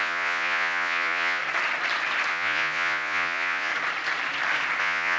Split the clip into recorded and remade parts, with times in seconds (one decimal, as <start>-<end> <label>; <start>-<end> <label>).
0.0-1.4 remade; 1.4-2.3 recorded; 2.3-3.7 remade; 3.7-4.8 recorded; 4.8-5.2 remade